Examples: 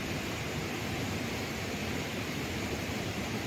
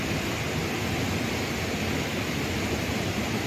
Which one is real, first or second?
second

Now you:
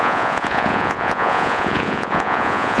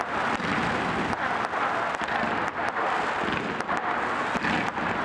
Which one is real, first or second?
second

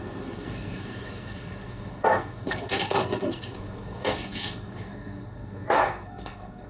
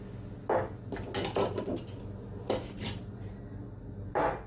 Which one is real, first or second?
second